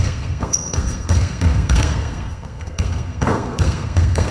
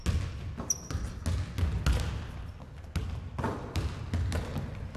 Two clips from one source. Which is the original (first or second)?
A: second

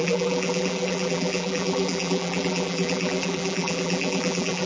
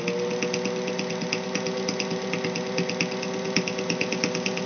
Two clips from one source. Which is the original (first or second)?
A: second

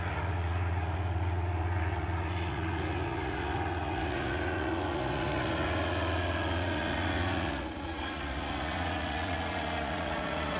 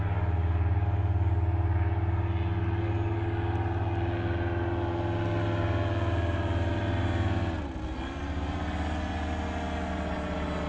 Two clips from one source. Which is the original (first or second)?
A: second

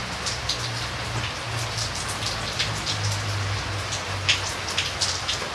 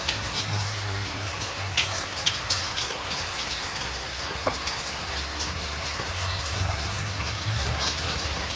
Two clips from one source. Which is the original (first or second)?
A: first